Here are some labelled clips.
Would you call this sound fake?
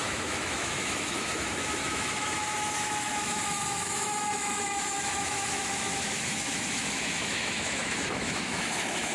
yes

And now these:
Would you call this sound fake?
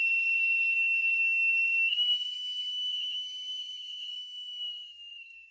yes